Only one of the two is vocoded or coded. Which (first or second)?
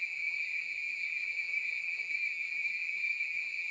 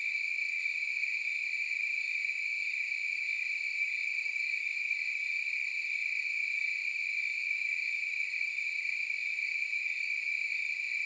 first